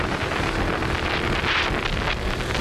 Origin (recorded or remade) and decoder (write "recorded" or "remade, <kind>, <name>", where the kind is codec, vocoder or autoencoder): recorded